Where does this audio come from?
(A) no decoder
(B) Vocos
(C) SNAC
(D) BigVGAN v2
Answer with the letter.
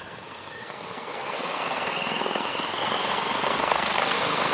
C